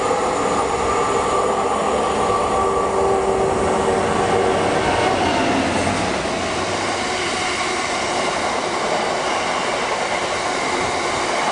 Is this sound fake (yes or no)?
no